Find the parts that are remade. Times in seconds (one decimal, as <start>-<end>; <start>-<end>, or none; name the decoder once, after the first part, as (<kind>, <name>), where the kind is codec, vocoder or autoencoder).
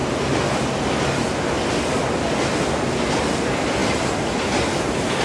none